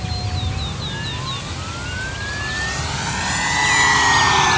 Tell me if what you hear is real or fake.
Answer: real